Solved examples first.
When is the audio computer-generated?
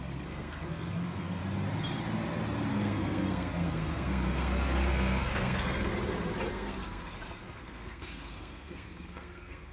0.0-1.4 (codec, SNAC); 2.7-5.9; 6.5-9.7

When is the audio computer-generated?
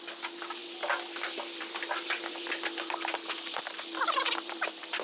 0.0-5.0 (vocoder, BigVGAN v2)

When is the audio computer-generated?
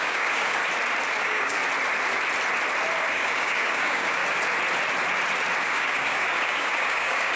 0.0-0.6 (codec, DAC); 1.2-1.6; 3.1-4.2; 5.6-7.4